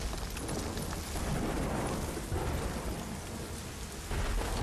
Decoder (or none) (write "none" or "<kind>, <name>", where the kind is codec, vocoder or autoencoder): none